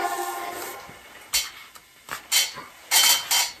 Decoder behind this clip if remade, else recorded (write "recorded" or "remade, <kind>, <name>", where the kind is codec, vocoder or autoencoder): recorded